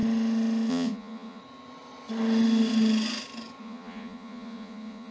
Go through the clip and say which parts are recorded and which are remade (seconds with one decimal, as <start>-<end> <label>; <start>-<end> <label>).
0.0-0.7 recorded; 0.7-1.4 remade; 1.4-3.6 recorded; 3.6-5.1 remade